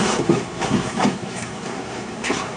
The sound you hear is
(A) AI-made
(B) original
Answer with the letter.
A